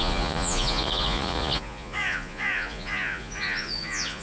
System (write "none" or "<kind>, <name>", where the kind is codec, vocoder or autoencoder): vocoder, Vocos